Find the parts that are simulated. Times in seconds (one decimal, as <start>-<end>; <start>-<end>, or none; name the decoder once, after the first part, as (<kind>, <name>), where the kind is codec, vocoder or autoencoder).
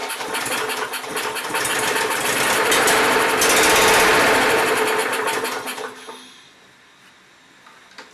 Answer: 0.0-3.4 (vocoder, BigVGAN v2)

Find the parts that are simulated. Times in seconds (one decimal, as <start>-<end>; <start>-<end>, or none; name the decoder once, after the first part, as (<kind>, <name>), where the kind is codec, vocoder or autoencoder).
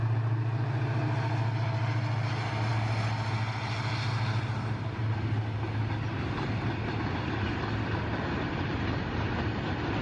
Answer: none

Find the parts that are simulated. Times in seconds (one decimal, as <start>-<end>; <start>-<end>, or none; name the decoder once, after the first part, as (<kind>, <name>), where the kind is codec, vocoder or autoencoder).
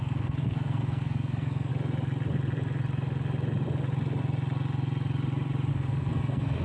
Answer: 0.0-1.7 (codec, SNAC); 5.7-6.6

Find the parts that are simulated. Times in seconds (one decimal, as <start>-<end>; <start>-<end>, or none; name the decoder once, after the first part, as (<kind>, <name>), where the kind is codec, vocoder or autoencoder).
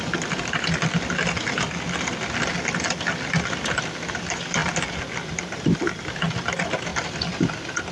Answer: none